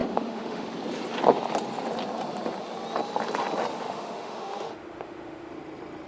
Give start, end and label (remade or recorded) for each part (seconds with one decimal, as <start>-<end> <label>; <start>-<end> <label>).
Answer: 0.0-0.7 remade; 0.7-3.7 recorded; 3.7-5.5 remade; 5.5-6.1 recorded